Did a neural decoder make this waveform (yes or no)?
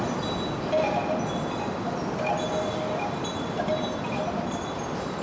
no